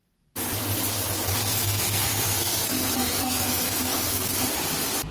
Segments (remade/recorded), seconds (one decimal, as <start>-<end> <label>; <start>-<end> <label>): 0.0-1.3 recorded; 1.3-4.4 remade; 4.4-5.1 recorded